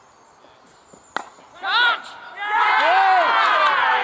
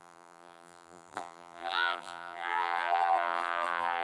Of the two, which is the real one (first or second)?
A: first